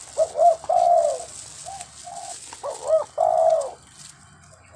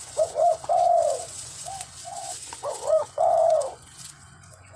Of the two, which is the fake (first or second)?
second